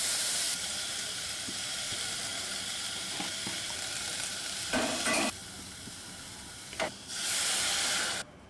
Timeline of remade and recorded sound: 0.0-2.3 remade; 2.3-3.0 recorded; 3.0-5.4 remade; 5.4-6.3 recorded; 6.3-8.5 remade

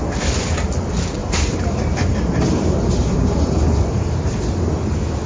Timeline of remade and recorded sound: 0.0-1.2 recorded; 1.2-4.4 remade; 4.4-5.3 recorded

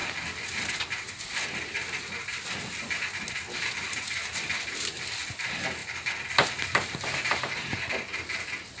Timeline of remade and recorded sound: 0.0-0.6 recorded; 0.6-5.8 remade; 5.8-6.5 recorded; 6.5-8.8 remade

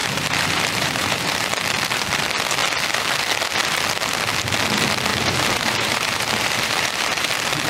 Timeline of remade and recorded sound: 0.0-1.4 remade; 1.4-5.1 recorded; 5.1-7.3 remade; 7.3-7.7 recorded

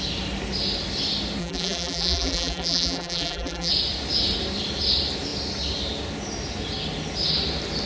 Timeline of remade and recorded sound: 0.0-1.4 recorded; 1.4-3.7 remade; 3.7-7.9 recorded

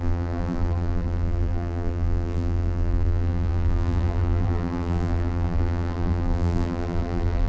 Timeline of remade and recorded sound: 0.0-7.5 remade

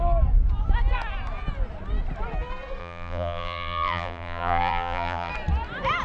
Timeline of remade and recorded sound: 0.0-2.8 recorded; 2.8-5.3 remade; 5.3-6.0 recorded

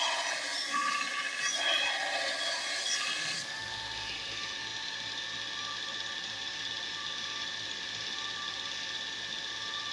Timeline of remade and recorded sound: 0.0-9.9 recorded